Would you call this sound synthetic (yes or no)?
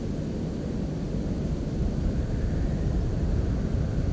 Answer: no